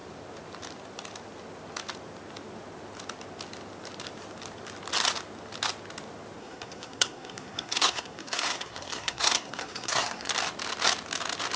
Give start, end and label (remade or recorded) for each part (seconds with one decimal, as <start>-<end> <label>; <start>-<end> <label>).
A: 0.0-6.4 recorded; 6.4-10.3 remade; 10.3-11.6 recorded